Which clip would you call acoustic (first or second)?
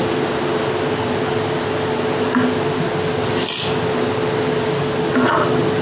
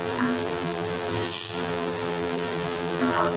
first